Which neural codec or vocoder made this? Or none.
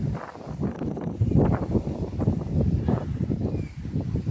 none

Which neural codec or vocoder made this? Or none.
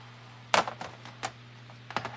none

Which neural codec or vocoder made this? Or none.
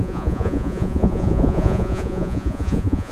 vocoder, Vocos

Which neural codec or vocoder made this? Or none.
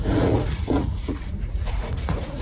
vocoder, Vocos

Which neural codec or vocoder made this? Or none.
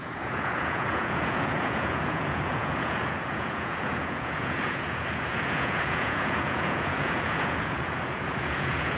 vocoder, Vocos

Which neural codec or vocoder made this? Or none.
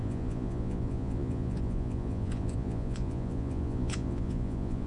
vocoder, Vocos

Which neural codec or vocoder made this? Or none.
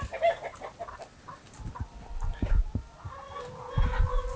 none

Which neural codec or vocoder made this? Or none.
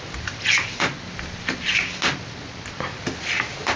none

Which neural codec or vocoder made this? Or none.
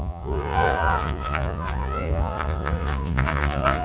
vocoder, Vocos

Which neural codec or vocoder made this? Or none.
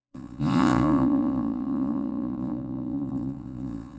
vocoder, Vocos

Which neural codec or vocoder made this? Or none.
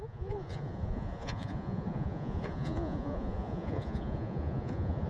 vocoder, Vocos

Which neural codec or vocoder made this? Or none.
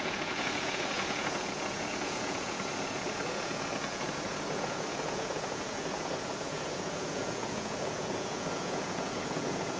vocoder, Vocos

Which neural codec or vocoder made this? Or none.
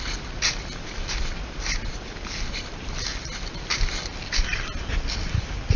none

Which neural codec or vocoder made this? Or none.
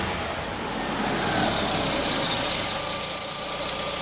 none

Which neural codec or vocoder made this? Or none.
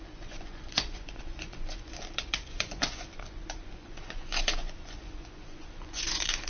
vocoder, Vocos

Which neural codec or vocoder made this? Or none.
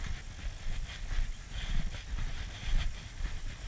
none